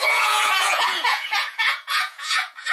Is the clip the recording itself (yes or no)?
no